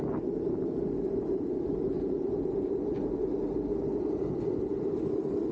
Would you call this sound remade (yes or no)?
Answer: no